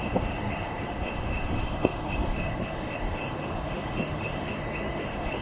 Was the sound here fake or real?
fake